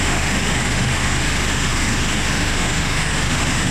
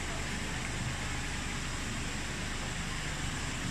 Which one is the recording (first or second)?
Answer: second